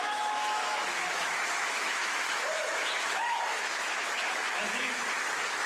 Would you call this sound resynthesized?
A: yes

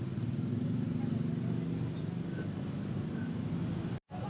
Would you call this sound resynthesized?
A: no